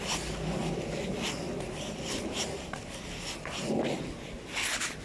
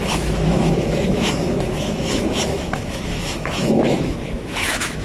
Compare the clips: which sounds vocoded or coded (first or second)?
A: second